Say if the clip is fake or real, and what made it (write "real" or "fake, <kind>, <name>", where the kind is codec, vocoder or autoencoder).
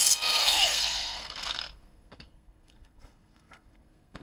fake, codec, SNAC